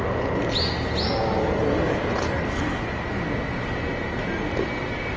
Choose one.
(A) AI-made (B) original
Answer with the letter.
B